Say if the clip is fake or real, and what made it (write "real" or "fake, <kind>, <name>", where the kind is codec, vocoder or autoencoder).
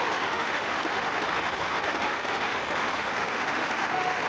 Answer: fake, autoencoder, DAC-VAE